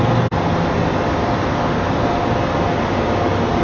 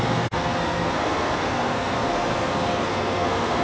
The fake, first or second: second